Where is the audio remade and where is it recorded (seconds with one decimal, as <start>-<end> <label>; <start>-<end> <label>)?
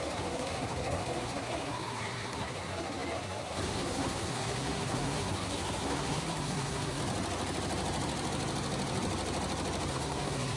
0.0-7.0 remade; 7.0-9.9 recorded; 9.9-10.6 remade